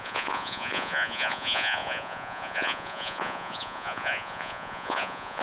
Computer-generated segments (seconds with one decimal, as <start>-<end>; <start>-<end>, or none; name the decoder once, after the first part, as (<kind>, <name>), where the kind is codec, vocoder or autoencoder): 0.0-5.4 (vocoder, Vocos)